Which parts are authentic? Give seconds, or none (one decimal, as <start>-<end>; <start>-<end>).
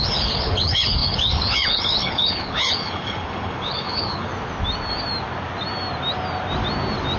4.3-7.2